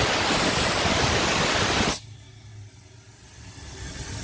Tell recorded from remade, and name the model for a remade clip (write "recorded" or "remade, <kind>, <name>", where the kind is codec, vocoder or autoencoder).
recorded